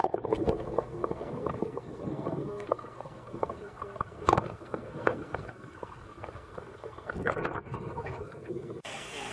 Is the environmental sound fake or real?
fake